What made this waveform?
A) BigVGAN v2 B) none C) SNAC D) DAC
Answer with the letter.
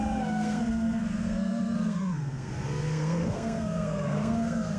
C